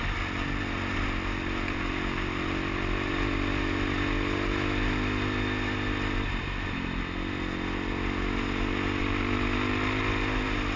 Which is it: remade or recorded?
recorded